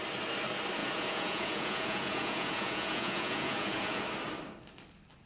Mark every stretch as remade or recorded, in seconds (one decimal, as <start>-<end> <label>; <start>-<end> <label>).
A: 0.0-0.8 recorded; 0.8-4.0 remade; 4.0-5.3 recorded